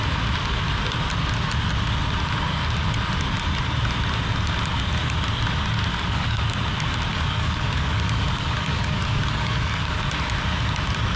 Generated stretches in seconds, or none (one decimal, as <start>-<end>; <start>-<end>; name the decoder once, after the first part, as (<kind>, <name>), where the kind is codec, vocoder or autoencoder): 5.9-6.4 (codec, DAC); 7.1-10.0